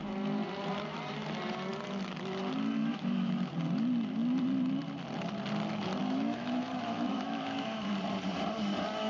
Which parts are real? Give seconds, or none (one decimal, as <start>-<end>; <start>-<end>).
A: 0.0-2.8; 3.5-6.0; 7.9-9.1